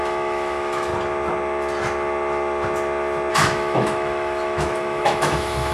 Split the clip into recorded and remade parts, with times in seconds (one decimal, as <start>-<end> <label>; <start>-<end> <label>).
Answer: 0.0-0.9 remade; 0.9-3.3 recorded; 3.3-5.7 remade